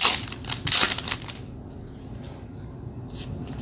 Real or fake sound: real